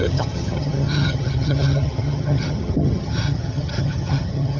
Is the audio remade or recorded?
remade